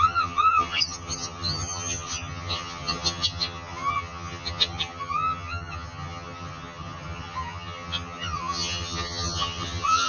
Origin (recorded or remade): remade